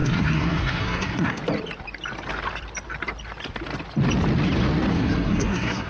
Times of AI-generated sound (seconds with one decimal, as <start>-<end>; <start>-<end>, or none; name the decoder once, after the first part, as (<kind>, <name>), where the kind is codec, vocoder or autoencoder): 0.0-1.4 (codec, SNAC); 4.9-5.9